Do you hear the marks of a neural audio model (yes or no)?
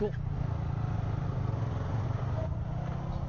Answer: no